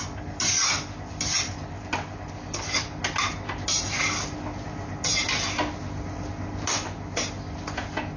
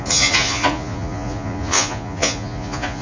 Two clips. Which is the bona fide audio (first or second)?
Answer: first